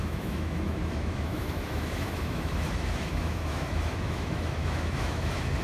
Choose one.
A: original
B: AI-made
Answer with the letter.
B